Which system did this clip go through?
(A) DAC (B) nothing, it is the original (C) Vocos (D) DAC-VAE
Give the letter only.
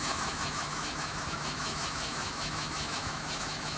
D